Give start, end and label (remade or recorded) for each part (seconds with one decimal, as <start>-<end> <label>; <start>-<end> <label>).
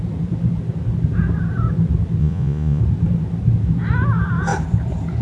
0.0-2.2 recorded; 2.2-2.8 remade; 2.8-5.2 recorded